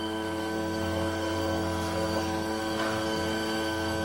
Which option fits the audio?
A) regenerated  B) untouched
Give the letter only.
A